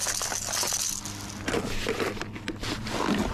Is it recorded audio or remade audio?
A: recorded